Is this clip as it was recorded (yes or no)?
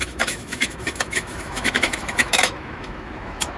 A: no